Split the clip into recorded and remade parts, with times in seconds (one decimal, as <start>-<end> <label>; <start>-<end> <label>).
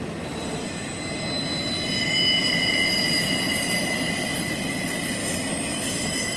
0.0-5.2 recorded; 5.2-6.4 remade